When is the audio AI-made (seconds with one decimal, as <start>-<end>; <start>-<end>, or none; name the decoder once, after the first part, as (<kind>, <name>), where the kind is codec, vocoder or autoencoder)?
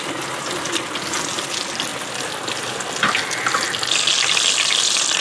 none